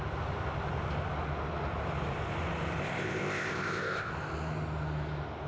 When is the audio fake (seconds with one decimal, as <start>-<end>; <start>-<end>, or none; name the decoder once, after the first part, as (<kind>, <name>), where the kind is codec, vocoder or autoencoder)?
2.8-4.1 (codec, ZipCodec)

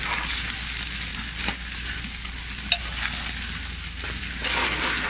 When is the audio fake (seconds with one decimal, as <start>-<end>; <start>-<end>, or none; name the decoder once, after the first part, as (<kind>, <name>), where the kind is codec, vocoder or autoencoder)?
none

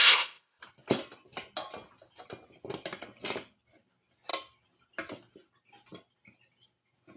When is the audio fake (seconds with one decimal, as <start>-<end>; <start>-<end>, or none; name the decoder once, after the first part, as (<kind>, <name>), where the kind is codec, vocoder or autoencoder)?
0.0-0.6 (codec, ZipCodec)

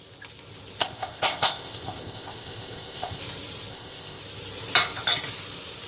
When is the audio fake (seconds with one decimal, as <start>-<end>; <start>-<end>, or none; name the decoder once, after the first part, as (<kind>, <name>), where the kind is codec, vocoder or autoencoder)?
0.8-3.2 (codec, ZipCodec); 3.7-4.2

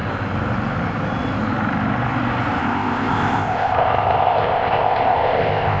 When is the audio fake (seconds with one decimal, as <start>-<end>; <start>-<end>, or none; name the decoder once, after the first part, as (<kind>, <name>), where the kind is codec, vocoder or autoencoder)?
2.6-5.8 (codec, ZipCodec)

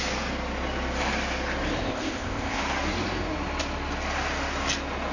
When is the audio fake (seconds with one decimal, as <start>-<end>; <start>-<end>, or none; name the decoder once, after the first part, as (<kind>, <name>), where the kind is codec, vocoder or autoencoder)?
1.8-2.6 (codec, ZipCodec)